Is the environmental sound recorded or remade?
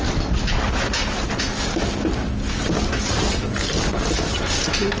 recorded